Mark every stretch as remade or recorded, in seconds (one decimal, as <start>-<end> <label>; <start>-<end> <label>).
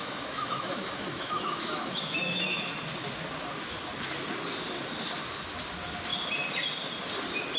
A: 0.0-2.6 remade; 2.6-7.6 recorded